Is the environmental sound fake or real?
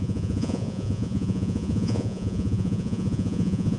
fake